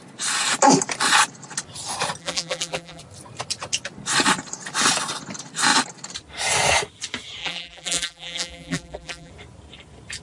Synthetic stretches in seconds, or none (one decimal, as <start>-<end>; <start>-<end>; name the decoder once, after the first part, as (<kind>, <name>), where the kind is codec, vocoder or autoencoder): 2.2-3.0 (vocoder, BigVGAN v2); 7.4-9.3

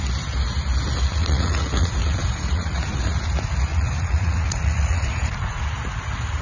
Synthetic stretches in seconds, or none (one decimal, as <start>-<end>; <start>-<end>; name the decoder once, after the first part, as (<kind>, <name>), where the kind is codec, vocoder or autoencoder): 1.1-3.2 (vocoder, Vocos); 3.7-5.6